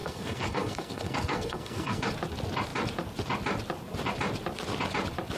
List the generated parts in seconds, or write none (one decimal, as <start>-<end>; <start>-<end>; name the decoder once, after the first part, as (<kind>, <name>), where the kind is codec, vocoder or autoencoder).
0.0-2.1 (codec, SNAC)